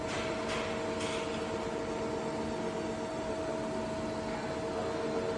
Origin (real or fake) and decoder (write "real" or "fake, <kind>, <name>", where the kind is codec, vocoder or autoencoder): real